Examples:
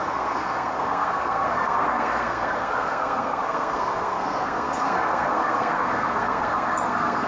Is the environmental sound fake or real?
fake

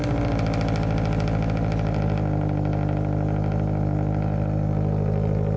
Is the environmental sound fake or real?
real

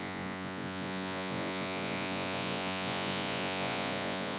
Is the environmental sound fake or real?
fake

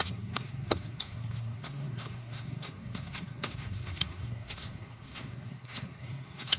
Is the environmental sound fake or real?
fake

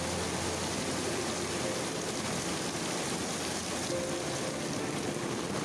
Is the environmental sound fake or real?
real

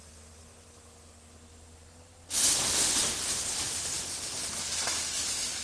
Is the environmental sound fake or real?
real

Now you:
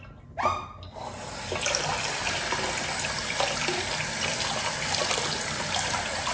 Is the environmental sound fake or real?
real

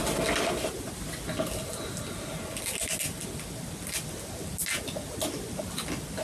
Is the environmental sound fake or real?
real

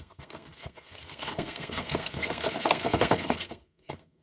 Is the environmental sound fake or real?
fake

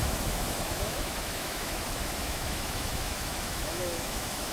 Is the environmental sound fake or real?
fake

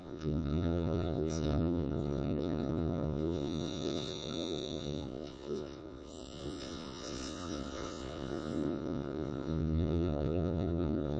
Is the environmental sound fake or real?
fake